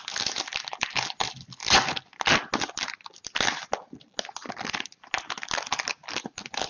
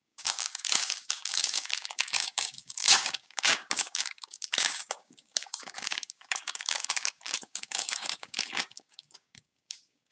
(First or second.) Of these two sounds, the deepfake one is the second